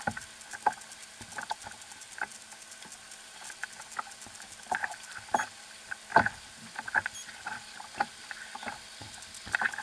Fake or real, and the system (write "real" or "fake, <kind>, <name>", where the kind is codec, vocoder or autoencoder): real